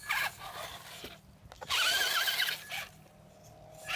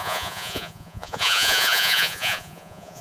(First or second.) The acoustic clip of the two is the first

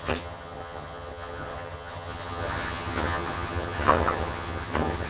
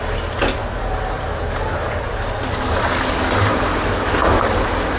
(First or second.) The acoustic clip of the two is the second